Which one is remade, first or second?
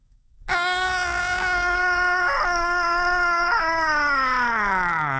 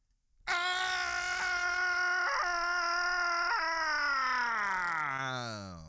first